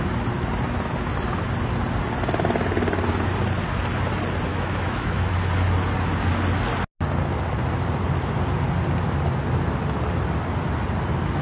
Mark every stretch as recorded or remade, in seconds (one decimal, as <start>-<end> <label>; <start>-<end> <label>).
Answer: 0.0-4.5 recorded; 4.5-5.3 remade; 5.3-11.4 recorded